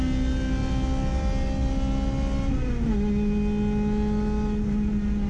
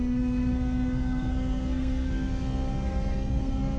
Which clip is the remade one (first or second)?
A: second